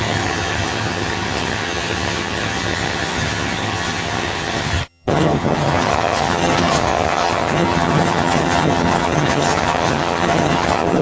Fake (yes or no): yes